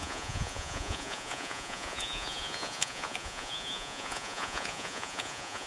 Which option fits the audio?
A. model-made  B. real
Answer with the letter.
A